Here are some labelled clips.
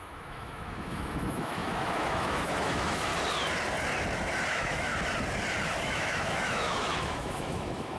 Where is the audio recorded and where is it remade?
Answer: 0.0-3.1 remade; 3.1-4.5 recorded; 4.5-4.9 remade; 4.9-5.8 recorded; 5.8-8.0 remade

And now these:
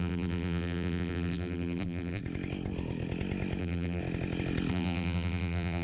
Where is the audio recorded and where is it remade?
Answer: 0.0-2.2 remade; 2.2-3.6 recorded; 3.6-4.0 remade; 4.0-4.7 recorded; 4.7-5.8 remade

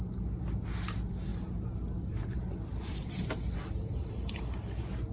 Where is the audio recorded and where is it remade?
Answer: 0.0-1.3 recorded; 1.3-4.4 remade; 4.4-5.1 recorded

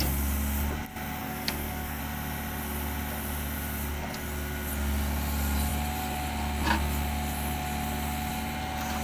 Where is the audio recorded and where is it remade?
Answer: 0.0-1.2 recorded; 1.2-2.0 remade; 2.0-9.0 recorded

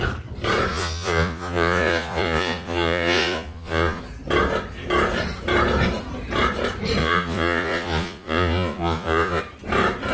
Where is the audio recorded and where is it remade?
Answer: 0.0-0.7 recorded; 0.7-4.0 remade; 4.0-7.0 recorded; 7.0-9.4 remade; 9.4-10.1 recorded